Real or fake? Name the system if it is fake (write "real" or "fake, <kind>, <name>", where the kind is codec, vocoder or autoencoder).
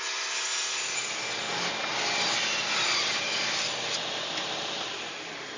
real